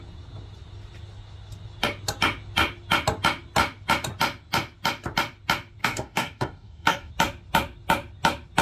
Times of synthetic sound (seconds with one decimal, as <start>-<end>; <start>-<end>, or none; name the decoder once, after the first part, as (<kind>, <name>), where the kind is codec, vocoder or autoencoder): 5.8-7.1 (codec, DAC)